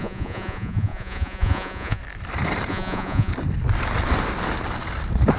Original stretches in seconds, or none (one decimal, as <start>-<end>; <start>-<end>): 2.0-2.7; 3.3-5.4

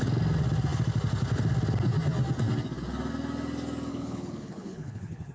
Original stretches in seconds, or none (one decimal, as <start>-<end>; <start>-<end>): 0.0-3.9